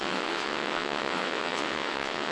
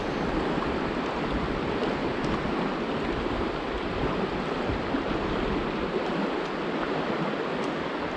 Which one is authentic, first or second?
second